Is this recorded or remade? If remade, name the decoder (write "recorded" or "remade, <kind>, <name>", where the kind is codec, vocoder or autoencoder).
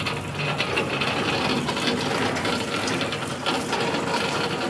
recorded